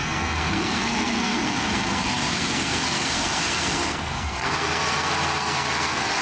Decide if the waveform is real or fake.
fake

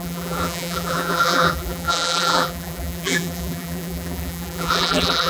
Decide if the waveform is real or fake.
fake